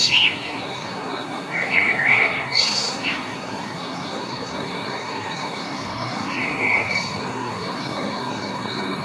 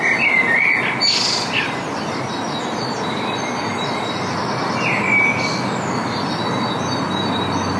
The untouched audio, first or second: second